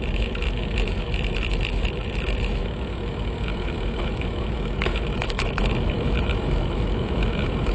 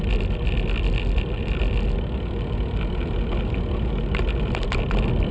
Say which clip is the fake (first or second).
first